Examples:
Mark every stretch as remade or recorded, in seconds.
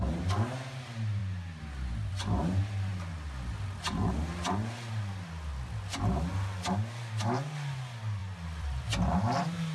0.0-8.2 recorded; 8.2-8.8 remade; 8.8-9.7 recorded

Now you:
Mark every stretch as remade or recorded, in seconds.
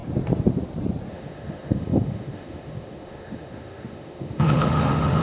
0.0-1.1 recorded; 1.1-5.2 remade